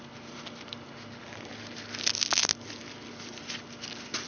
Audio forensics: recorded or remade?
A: recorded